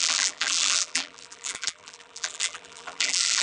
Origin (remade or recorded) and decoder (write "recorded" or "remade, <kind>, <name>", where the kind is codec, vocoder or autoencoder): remade, vocoder, BigVGAN v2